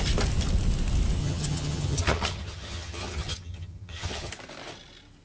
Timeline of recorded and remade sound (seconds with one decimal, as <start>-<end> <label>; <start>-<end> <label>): 0.0-1.2 recorded; 1.2-4.3 remade; 4.3-5.2 recorded